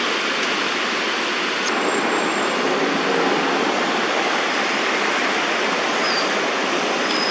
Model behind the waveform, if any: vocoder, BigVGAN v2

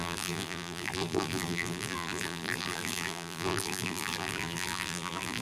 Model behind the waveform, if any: vocoder, BigVGAN v2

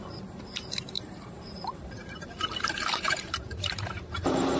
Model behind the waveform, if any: vocoder, BigVGAN v2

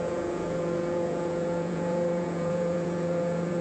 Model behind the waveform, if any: vocoder, Vocos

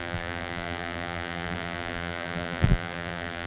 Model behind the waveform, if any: vocoder, BigVGAN v2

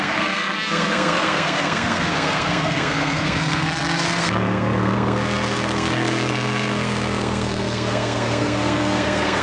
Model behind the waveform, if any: codec, SNAC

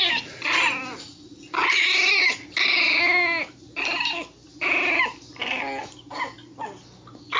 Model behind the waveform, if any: none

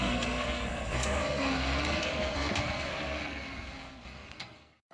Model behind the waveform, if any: codec, SNAC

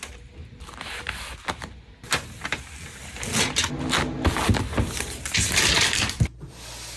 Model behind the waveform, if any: none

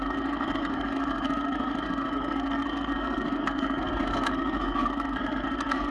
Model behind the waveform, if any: codec, SNAC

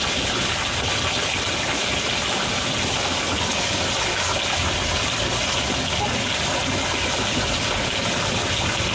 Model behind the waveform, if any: none